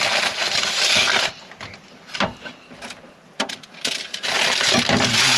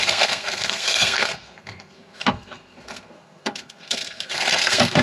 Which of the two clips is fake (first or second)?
second